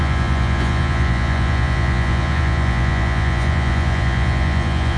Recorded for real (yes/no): no